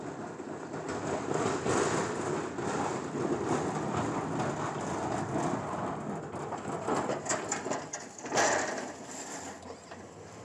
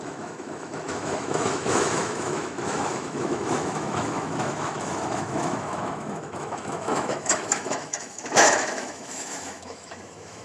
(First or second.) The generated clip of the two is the second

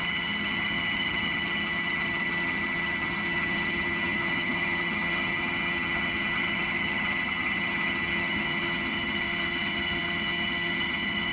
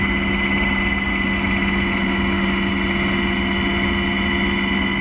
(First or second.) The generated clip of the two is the first